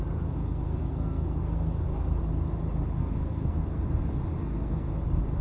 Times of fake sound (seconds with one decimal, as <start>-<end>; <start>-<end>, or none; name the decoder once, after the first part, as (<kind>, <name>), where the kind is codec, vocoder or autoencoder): 0.4-1.8 (codec, SNAC); 3.0-3.8; 4.4-4.9